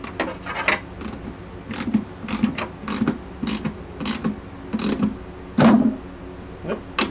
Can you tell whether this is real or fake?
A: real